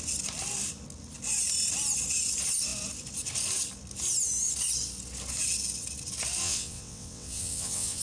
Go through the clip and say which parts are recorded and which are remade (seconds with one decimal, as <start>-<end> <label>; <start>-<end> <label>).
0.0-6.4 recorded; 6.4-8.0 remade